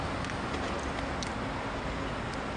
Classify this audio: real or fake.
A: real